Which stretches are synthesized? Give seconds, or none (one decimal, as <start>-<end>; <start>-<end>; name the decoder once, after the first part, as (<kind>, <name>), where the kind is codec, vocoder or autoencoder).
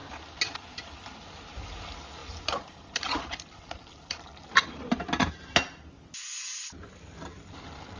none